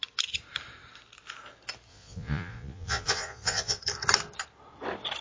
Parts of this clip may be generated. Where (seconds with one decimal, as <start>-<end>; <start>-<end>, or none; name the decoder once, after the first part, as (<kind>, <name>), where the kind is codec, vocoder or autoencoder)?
1.9-3.8 (vocoder, Vocos)